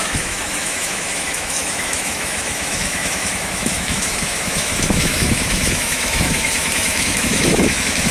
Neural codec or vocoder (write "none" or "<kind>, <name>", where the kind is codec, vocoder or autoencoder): autoencoder, DAC-VAE